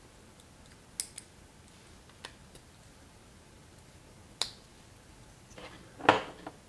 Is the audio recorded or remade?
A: recorded